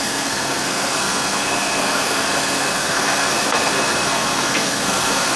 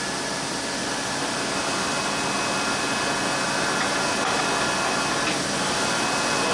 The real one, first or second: second